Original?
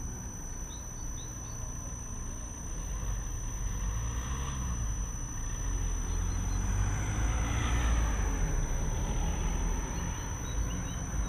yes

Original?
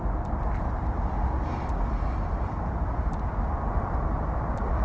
yes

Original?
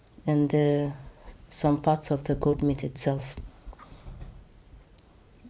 no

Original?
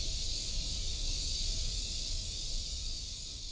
no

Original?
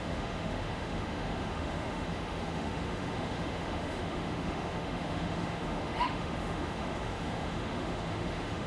no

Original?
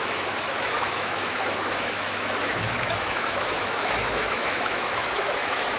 no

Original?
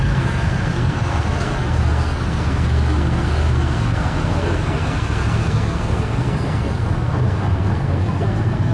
no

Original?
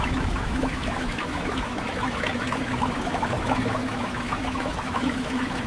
no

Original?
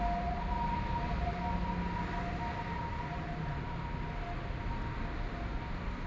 yes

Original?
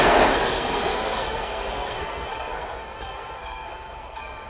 no